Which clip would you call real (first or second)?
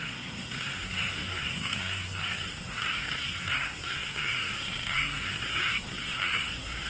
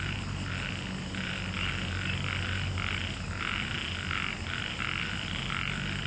second